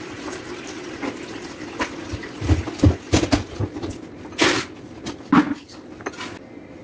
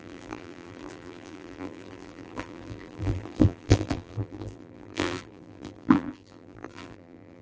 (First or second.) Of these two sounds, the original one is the first